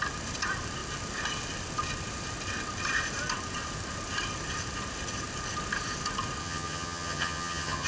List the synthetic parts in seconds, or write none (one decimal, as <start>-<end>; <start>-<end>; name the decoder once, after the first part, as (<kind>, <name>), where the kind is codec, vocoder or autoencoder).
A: 6.4-7.9 (vocoder, HiFi-GAN)